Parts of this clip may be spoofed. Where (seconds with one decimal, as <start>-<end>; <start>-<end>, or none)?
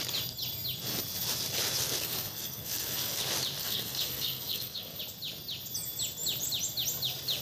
2.0-3.2; 3.6-5.0